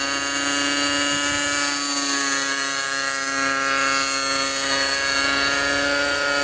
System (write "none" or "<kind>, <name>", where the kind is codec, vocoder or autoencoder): none